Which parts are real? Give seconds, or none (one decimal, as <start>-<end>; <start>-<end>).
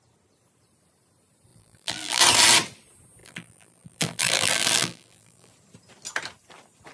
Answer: 0.0-1.5; 2.2-3.2; 5.5-6.9